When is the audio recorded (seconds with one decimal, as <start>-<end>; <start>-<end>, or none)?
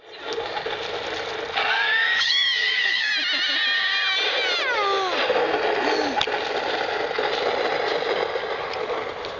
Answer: 0.0-1.7; 3.1-9.4